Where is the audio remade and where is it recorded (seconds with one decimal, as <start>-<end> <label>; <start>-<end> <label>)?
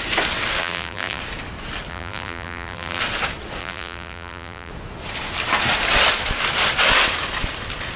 0.0-0.6 recorded; 0.6-1.2 remade; 1.2-1.9 recorded; 1.9-3.0 remade; 3.0-3.6 recorded; 3.6-4.7 remade; 4.7-8.0 recorded